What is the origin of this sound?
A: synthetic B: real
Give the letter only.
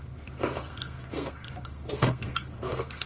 A